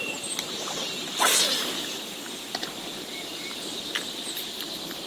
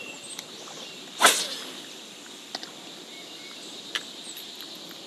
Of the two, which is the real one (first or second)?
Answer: second